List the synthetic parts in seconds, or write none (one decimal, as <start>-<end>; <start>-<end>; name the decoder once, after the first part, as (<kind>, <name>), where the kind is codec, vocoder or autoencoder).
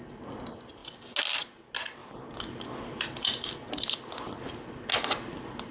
none